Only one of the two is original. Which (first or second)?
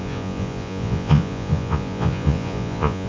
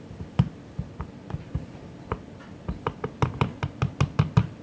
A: second